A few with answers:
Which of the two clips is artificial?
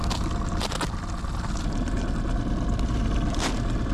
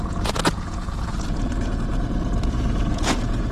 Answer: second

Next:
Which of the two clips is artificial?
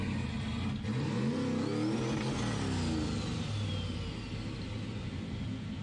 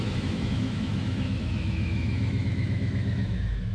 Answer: second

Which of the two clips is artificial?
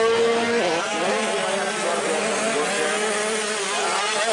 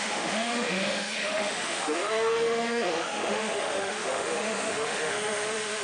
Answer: second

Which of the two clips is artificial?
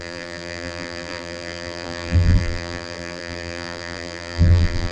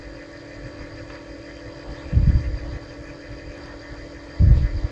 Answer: first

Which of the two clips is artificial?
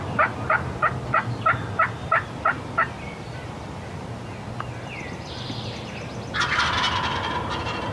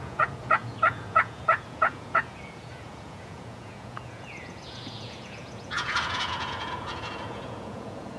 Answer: second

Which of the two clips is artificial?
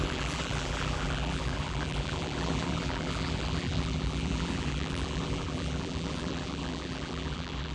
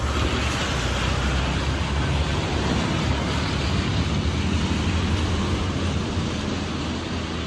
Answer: first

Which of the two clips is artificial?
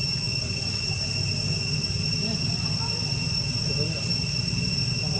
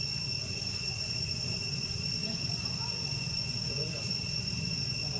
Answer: second